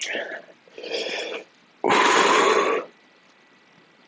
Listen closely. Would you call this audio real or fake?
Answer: real